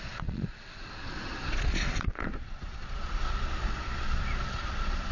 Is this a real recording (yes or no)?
no